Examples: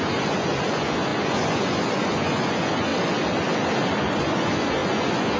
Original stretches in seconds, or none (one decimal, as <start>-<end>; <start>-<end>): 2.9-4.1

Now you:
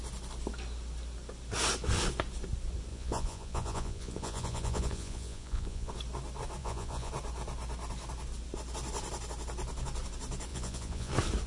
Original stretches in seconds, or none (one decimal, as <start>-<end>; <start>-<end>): 0.0-2.9; 5.9-6.6; 7.1-10.5; 11.1-11.5

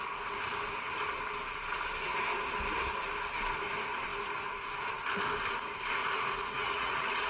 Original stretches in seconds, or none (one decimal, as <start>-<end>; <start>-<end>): 0.0-6.0

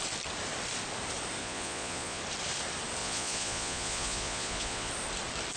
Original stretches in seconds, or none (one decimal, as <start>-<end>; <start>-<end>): 0.0-1.4; 2.2-3.0; 4.9-5.6